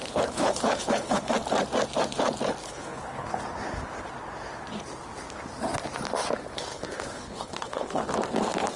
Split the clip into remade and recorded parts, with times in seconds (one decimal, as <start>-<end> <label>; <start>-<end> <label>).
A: 0.0-1.3 remade; 1.3-2.6 recorded; 2.6-3.4 remade; 3.4-6.7 recorded; 6.7-8.0 remade; 8.0-8.8 recorded